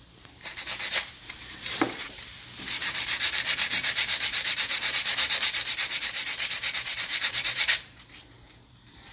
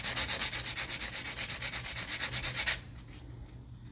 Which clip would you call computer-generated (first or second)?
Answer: first